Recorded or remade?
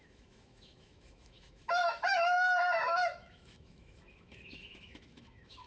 remade